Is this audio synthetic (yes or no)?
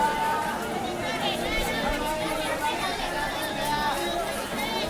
no